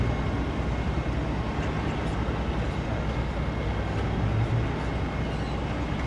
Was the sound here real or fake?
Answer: real